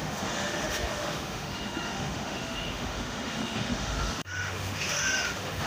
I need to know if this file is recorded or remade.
remade